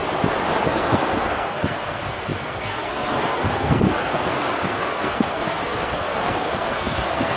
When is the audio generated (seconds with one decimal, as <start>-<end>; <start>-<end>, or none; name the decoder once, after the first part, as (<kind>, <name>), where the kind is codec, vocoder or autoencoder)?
0.6-7.4 (codec, SNAC)